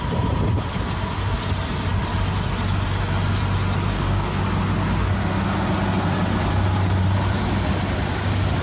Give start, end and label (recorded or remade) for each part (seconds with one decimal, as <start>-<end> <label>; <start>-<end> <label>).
0.0-3.9 recorded; 3.9-4.4 remade; 4.4-8.6 recorded